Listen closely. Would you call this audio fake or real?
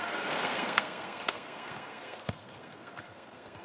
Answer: fake